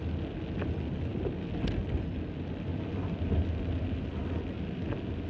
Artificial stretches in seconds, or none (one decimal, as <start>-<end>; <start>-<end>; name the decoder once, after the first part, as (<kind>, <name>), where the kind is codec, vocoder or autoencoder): none